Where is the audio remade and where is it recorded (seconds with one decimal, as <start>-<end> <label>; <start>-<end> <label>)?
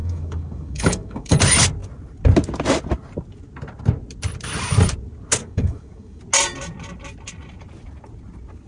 0.0-1.4 remade; 1.4-5.4 recorded; 5.4-6.2 remade; 6.2-8.7 recorded